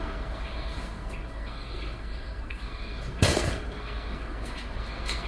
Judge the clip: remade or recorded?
remade